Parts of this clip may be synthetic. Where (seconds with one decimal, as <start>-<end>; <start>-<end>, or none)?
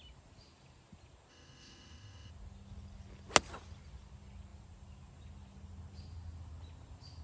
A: 1.3-2.3